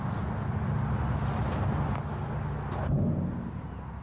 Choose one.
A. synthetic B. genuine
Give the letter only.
B